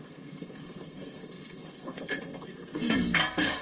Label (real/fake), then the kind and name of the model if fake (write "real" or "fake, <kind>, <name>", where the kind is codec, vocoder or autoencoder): fake, codec, SNAC